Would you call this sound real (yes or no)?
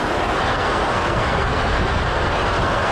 no